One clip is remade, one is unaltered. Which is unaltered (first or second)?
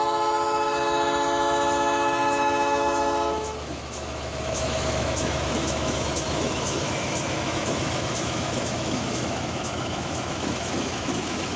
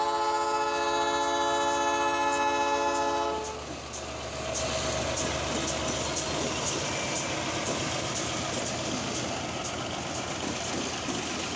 second